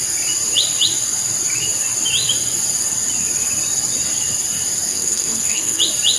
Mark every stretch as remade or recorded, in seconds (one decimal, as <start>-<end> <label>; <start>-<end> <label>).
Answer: 0.0-4.9 recorded; 4.9-5.8 remade; 5.8-6.2 recorded